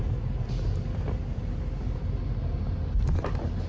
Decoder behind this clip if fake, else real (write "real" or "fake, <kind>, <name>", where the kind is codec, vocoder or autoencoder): real